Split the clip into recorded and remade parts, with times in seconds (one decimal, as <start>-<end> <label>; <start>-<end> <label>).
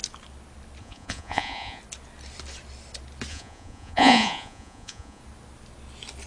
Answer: 0.0-0.8 recorded; 0.8-1.8 remade; 1.8-3.3 recorded; 3.3-5.2 remade; 5.2-6.3 recorded